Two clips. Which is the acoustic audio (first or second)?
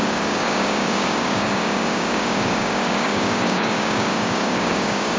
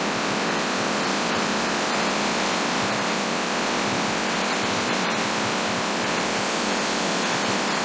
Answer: second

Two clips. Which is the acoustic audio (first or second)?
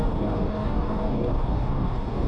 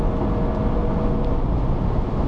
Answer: second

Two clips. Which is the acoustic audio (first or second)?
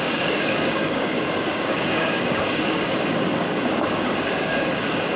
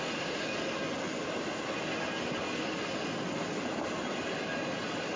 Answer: second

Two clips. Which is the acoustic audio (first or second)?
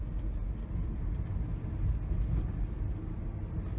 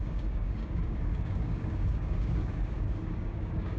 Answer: first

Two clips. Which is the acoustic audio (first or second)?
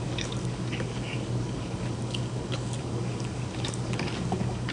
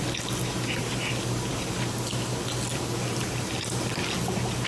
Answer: second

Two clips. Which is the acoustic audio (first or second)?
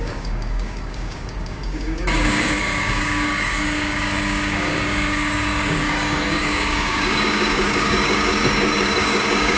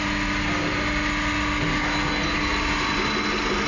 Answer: second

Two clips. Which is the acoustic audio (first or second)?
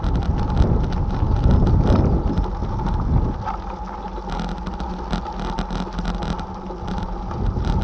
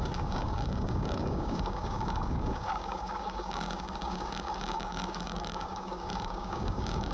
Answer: first